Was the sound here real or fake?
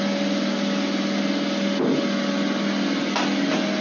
real